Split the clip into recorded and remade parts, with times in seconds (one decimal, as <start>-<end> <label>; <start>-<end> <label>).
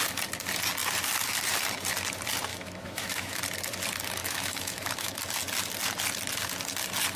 0.0-2.5 recorded; 2.5-3.4 remade; 3.4-4.2 recorded; 4.2-5.1 remade; 5.1-7.2 recorded